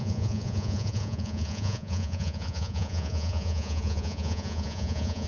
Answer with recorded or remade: remade